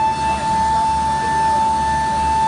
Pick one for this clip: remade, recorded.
recorded